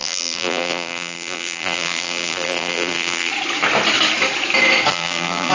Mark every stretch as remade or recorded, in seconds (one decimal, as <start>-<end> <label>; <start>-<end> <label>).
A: 0.0-3.3 remade; 3.3-4.9 recorded; 4.9-5.5 remade